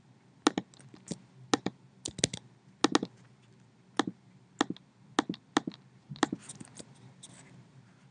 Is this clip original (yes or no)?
yes